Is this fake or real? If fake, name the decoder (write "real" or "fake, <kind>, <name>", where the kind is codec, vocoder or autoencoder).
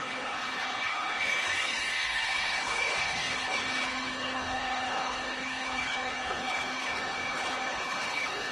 fake, codec, HILCodec